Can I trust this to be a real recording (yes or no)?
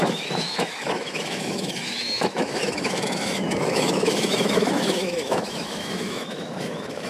no